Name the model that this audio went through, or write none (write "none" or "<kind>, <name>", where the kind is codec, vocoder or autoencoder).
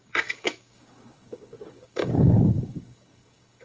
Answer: codec, DAC